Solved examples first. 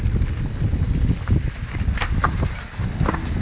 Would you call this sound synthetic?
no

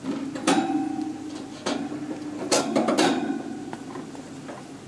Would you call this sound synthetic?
no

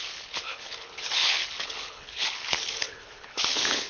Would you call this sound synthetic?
yes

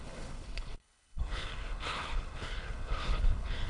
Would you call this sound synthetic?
yes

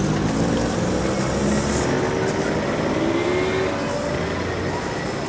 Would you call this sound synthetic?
no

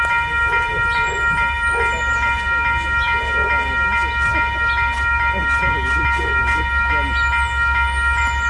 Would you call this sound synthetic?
no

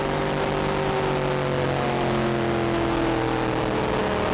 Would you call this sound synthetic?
no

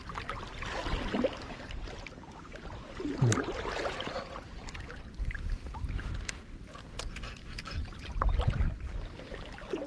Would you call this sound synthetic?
no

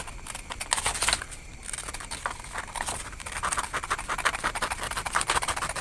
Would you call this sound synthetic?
no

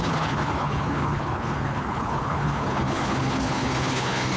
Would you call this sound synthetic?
yes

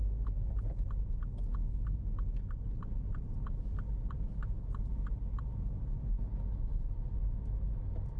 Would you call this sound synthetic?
no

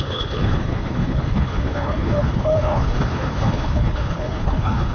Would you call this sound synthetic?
yes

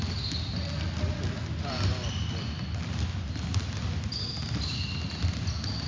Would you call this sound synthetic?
no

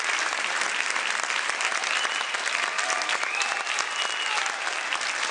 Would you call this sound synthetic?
no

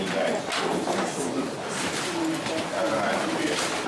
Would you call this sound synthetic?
no